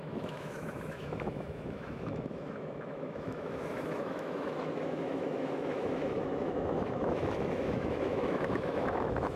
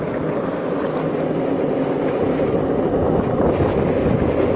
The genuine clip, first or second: second